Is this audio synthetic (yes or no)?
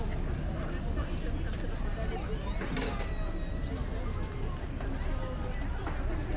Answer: no